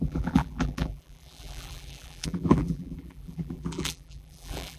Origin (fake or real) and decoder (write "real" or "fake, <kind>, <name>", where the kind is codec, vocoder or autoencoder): fake, vocoder, BigVGAN v2